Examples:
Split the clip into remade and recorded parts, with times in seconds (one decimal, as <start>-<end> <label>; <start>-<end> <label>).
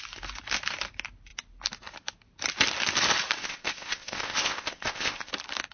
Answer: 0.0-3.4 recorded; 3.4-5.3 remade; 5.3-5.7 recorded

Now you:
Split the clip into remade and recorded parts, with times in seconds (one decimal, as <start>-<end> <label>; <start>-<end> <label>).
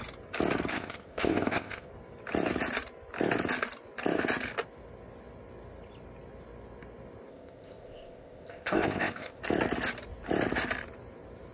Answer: 0.0-0.7 recorded; 0.7-1.9 remade; 1.9-7.3 recorded; 7.3-9.4 remade; 9.4-11.5 recorded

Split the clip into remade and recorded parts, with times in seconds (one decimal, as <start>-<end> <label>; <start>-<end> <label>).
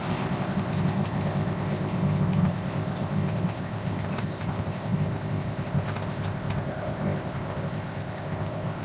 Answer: 0.0-8.8 remade